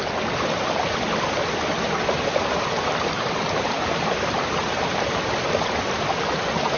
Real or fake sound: real